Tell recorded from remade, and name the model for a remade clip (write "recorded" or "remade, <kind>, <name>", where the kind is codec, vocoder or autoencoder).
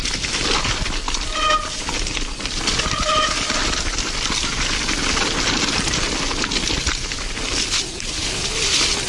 recorded